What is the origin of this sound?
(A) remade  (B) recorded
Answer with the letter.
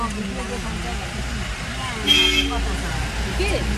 B